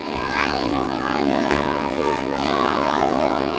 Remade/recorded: remade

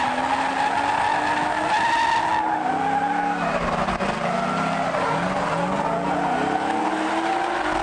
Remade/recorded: recorded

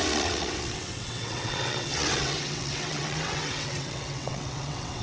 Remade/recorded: remade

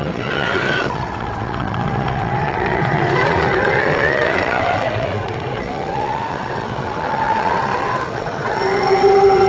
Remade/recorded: remade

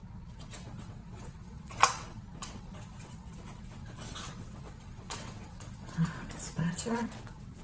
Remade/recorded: remade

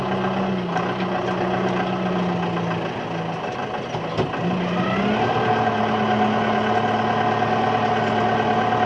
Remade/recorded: recorded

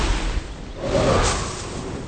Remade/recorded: recorded